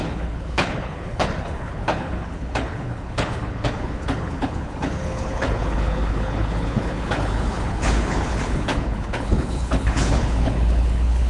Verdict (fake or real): fake